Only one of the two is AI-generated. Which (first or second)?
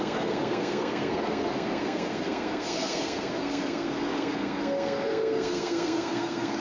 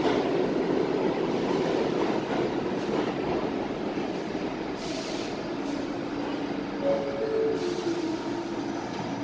first